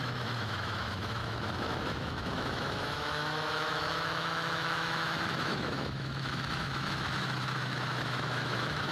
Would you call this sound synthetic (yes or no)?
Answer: yes